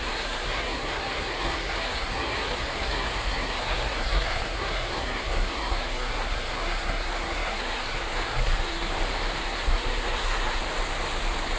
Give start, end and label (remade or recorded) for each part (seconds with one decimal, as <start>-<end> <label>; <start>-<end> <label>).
0.0-8.9 remade; 8.9-9.4 recorded; 9.4-10.6 remade; 10.6-11.6 recorded